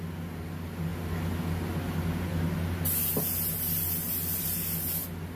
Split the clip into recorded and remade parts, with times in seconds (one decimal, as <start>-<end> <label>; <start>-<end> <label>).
0.0-5.4 recorded